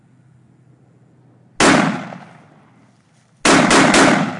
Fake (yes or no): no